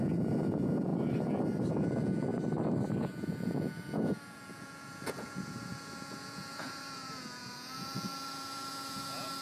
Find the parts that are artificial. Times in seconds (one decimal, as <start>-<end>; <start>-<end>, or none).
0.0-0.9; 1.7-2.3; 3.0-9.4